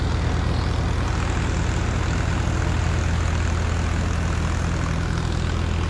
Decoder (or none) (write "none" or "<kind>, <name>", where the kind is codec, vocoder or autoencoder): none